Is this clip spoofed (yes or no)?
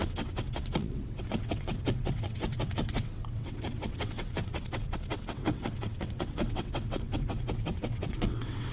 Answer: yes